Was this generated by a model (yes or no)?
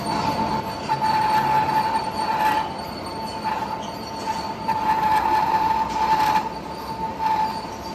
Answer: no